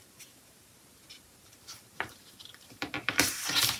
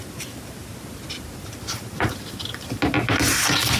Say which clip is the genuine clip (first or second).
second